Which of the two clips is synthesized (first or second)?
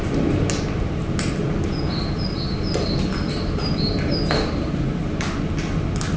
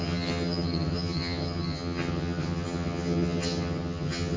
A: second